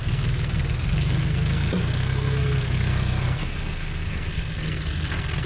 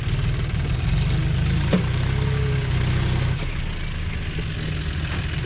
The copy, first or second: first